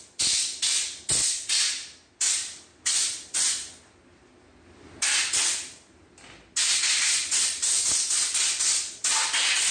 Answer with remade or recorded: recorded